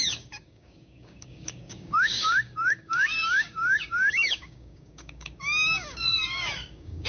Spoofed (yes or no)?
yes